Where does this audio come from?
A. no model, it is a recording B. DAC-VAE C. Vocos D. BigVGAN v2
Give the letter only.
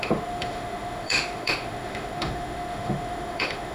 B